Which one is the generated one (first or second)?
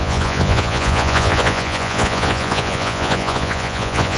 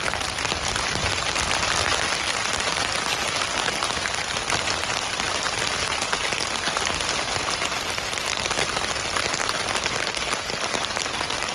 first